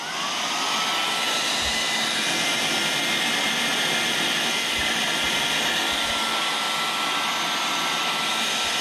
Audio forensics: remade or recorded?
recorded